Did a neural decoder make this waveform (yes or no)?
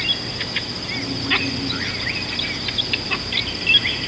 no